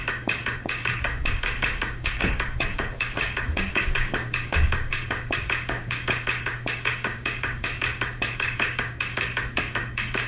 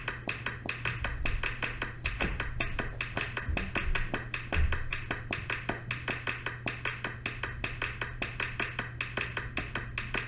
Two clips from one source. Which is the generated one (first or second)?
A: first